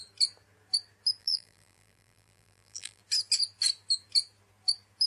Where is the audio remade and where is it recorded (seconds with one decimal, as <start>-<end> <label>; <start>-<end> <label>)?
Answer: 0.0-1.2 recorded; 1.2-3.0 remade; 3.0-5.1 recorded